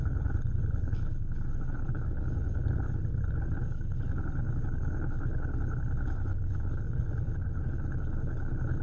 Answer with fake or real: fake